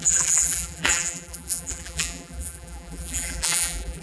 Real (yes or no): no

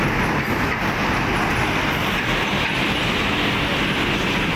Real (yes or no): yes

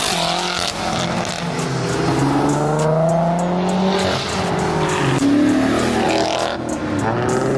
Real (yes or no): yes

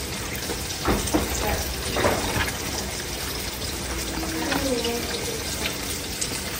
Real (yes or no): yes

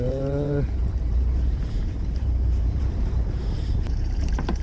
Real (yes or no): no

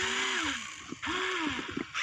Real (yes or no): yes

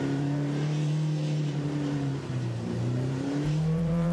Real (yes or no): no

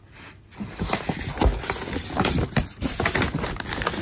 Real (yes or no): yes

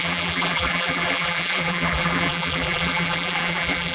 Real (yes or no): no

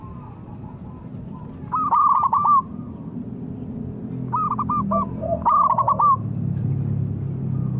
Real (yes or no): yes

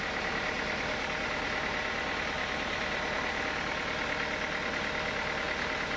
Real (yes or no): yes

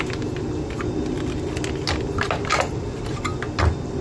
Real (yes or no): yes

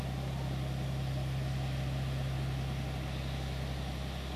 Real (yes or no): yes